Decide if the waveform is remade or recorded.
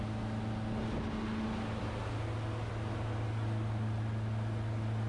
recorded